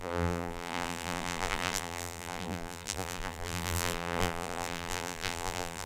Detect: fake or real fake